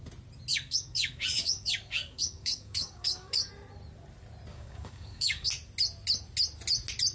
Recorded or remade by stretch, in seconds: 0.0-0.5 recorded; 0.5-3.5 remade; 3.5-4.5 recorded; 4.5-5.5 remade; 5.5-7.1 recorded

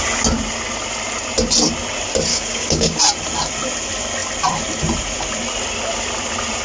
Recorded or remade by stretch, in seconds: 0.0-2.3 recorded; 2.3-3.0 remade; 3.0-6.6 recorded

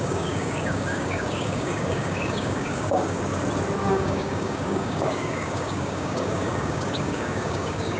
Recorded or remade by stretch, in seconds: 0.0-3.3 remade; 3.3-3.9 recorded; 3.9-8.0 remade

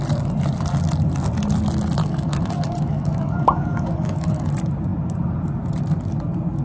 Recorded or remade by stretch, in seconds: 0.0-2.0 recorded; 2.0-4.5 remade; 4.5-6.6 recorded

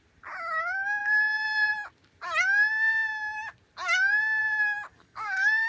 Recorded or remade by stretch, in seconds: 0.0-4.9 recorded; 4.9-5.7 remade

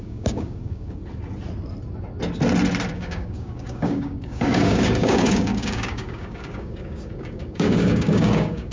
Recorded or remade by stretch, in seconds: 0.0-1.0 remade; 1.0-2.9 recorded; 2.9-8.7 remade

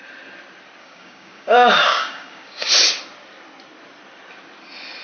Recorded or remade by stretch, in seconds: 0.0-0.8 recorded; 0.8-2.7 remade; 2.7-5.0 recorded

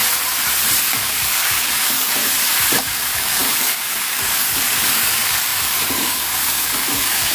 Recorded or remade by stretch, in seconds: 0.0-0.9 recorded; 0.9-2.2 remade; 2.2-2.8 recorded; 2.8-7.3 remade